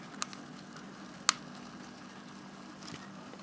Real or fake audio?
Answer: real